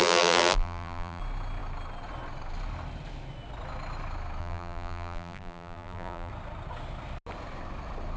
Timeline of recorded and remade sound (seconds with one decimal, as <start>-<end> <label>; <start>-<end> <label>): 0.0-1.2 remade; 1.2-4.4 recorded; 4.4-6.3 remade; 6.3-8.2 recorded